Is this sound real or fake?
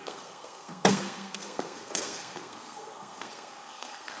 fake